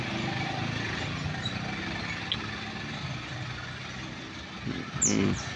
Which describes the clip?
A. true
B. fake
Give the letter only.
A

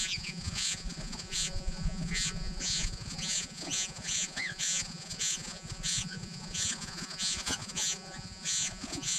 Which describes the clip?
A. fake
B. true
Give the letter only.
A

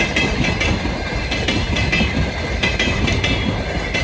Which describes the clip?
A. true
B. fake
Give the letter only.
A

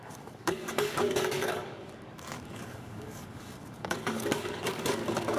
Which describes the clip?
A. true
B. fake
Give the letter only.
B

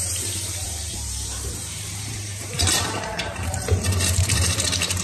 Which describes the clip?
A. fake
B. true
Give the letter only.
A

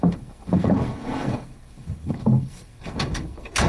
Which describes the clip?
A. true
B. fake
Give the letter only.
B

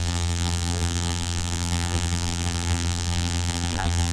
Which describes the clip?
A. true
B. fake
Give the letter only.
B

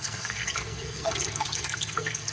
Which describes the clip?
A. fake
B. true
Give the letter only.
A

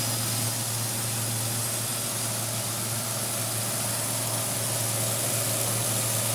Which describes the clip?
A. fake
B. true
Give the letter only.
B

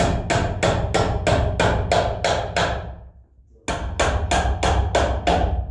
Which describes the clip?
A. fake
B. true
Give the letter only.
B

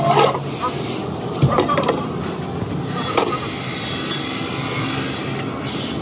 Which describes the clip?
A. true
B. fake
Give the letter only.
A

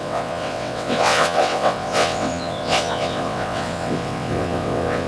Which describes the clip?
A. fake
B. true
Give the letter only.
A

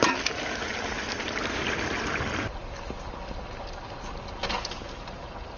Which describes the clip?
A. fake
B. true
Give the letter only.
B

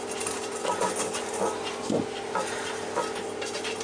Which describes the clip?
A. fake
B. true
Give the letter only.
A